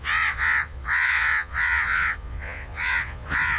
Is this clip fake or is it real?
fake